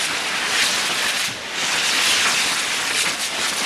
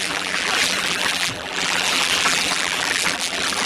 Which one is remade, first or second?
second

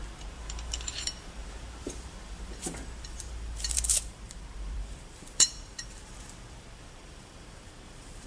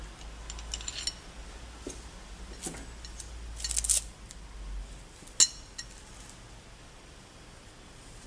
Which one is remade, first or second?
first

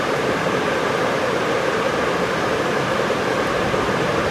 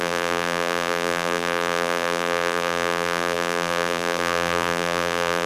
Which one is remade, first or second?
second